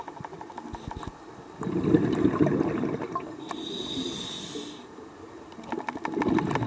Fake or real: real